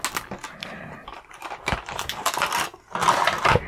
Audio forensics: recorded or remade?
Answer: recorded